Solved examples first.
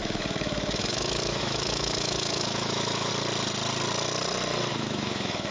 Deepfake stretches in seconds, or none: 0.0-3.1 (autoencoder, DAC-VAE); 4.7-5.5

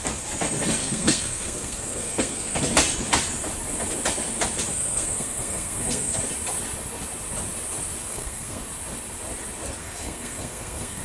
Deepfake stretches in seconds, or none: 0.8-2.6 (codec, SNAC); 4.7-6.2; 8.0-8.6; 9.8-11.0

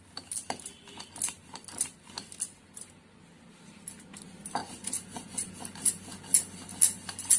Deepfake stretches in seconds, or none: 4.6-5.5 (vocoder, Vocos)

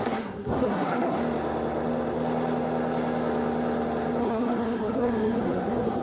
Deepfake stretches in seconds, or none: 0.0-1.2 (codec, SNAC); 4.2-6.0

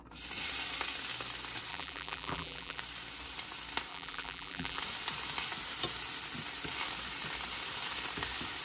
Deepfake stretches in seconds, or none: 1.7-2.8 (vocoder, BigVGAN v2); 3.9-4.8